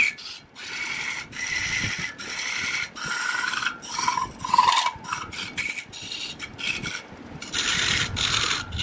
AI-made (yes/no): no